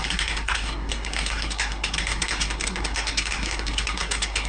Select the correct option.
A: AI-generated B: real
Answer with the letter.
A